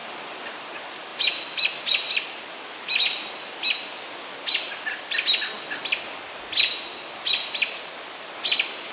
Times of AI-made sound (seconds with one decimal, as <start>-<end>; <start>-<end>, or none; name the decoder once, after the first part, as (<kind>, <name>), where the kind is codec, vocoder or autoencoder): none